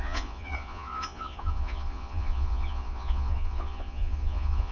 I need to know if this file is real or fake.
fake